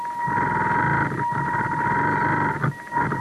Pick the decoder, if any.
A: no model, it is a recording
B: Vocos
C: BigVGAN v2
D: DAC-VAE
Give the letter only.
A